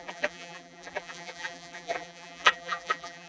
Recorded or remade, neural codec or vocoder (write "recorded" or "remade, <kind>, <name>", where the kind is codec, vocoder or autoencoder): remade, vocoder, BigVGAN v2